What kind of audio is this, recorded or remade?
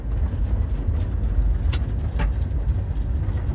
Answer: recorded